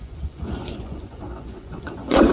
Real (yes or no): no